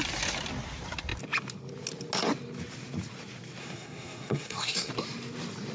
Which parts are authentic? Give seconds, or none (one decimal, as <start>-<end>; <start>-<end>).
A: 0.0-3.6; 4.9-5.7